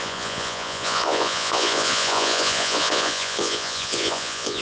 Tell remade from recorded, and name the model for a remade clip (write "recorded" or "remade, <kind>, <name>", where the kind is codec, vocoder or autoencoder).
remade, vocoder, Vocos